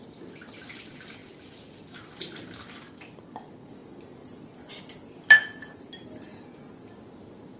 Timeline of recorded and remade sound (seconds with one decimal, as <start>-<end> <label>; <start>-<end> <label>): 0.0-7.6 recorded